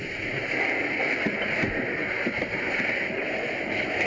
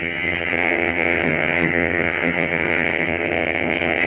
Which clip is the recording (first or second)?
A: first